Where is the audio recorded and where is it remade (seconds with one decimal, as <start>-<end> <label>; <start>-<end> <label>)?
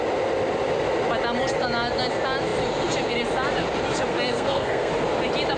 0.0-4.1 recorded; 4.1-4.9 remade; 4.9-5.6 recorded